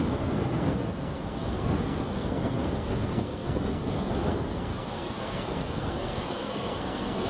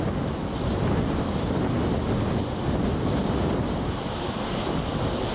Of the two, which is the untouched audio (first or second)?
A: second